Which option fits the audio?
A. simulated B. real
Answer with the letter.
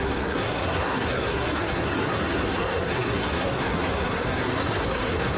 A